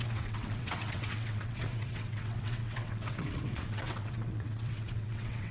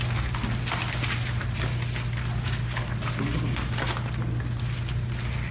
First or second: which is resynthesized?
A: first